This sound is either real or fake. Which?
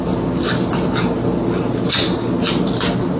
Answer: real